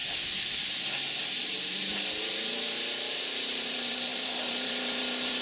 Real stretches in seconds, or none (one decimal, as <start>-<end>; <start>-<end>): 0.0-1.4